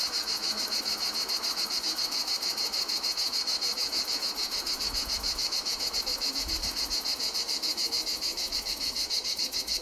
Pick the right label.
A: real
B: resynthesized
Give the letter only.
B